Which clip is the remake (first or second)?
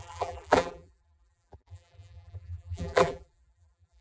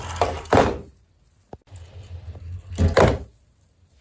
first